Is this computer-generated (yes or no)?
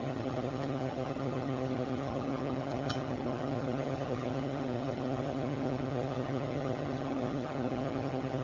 yes